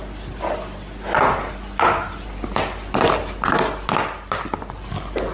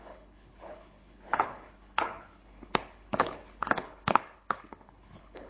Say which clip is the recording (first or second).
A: first